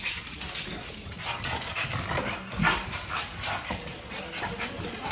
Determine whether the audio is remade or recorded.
recorded